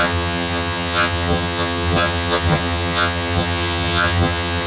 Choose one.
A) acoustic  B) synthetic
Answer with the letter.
B